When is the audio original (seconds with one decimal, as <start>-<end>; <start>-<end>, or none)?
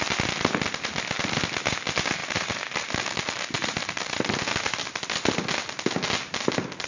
0.0-2.2; 4.2-6.9